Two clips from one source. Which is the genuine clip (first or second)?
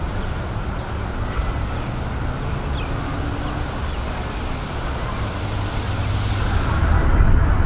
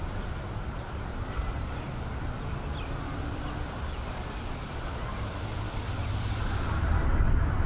first